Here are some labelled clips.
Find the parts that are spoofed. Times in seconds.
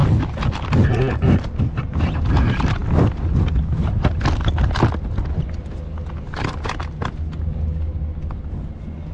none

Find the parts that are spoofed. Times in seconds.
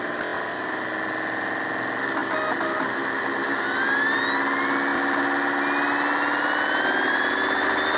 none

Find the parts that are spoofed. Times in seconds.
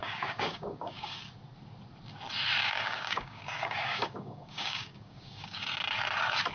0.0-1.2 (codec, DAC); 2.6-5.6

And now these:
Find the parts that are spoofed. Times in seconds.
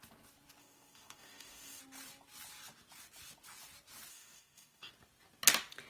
0.6-1.8 (codec, DAC); 4.1-4.9